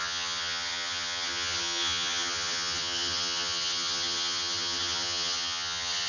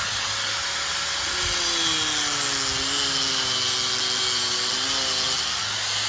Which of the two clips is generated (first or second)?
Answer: first